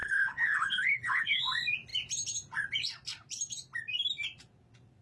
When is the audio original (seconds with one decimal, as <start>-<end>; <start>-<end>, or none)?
1.4-5.0